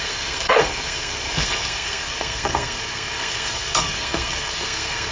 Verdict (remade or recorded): remade